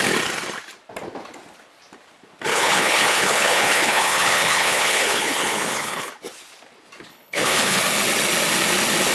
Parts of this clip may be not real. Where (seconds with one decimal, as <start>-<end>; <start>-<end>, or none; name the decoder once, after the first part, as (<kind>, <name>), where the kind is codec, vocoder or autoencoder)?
2.5-6.1 (codec, HILCodec); 7.1-7.8